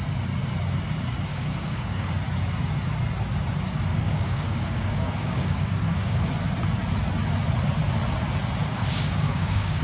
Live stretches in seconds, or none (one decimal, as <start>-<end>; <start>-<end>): 0.0-1.3; 2.1-3.9; 6.3-8.6